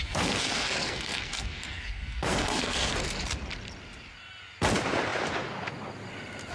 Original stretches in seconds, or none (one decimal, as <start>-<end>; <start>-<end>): 2.9-6.5